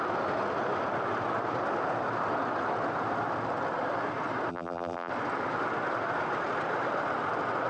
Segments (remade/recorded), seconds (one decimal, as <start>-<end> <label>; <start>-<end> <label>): 0.0-4.5 recorded; 4.5-5.1 remade; 5.1-7.7 recorded